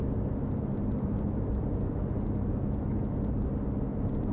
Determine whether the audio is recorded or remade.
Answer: recorded